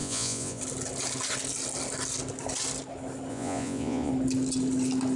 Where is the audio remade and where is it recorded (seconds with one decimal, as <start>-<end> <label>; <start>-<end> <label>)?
0.0-0.6 remade; 0.6-3.3 recorded; 3.3-4.1 remade; 4.1-5.2 recorded